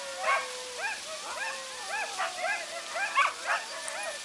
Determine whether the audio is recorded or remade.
recorded